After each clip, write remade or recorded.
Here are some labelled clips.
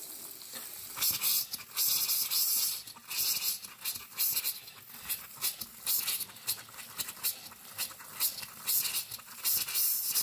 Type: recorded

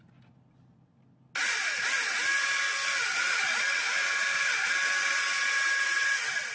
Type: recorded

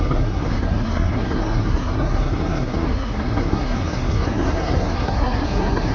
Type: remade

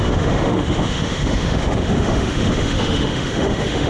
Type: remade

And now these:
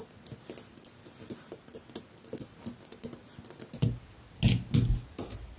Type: recorded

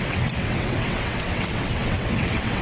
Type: remade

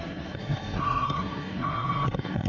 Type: remade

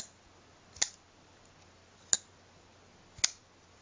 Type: recorded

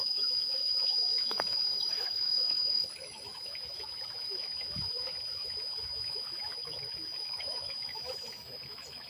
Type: remade